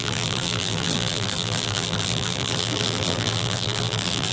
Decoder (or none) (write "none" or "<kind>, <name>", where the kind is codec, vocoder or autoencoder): vocoder, BigVGAN v2